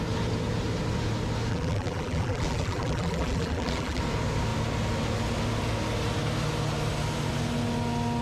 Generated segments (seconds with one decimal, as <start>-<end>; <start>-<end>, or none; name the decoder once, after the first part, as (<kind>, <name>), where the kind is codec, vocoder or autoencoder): 1.5-4.0 (vocoder, BigVGAN v2)